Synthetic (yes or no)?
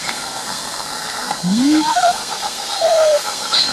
yes